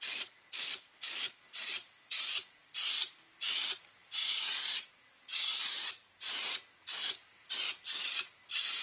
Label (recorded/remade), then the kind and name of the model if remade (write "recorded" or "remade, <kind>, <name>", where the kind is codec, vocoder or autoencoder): remade, vocoder, BigVGAN v2